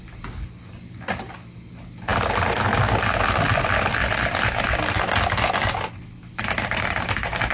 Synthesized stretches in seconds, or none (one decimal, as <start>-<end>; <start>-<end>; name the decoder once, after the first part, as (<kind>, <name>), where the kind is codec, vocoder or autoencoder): none